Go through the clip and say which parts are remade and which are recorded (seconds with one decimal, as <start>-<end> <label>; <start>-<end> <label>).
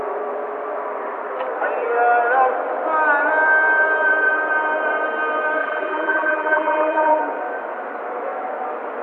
0.0-5.6 recorded; 5.6-7.2 remade; 7.2-9.0 recorded